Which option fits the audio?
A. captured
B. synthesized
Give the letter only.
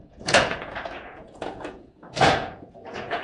B